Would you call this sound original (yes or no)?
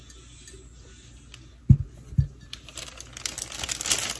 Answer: yes